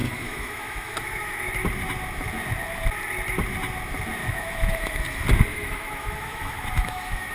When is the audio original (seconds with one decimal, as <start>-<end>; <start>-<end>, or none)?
1.5-4.2; 5.0-5.5